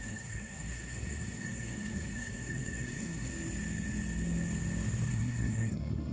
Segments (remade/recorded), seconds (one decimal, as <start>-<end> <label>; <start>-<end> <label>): 0.0-3.3 remade; 3.3-5.1 recorded; 5.1-6.1 remade